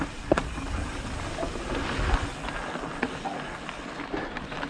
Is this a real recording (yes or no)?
yes